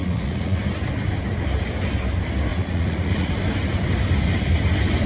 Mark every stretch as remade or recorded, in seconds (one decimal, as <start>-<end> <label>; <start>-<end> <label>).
0.0-0.6 remade; 0.6-2.5 recorded; 2.5-3.3 remade; 3.3-5.1 recorded